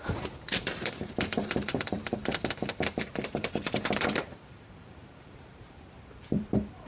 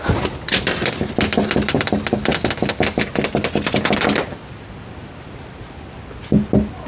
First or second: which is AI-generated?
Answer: first